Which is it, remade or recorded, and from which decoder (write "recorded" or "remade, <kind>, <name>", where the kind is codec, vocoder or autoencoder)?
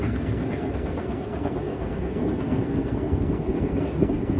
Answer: remade, codec, SNAC